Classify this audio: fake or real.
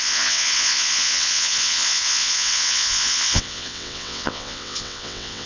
fake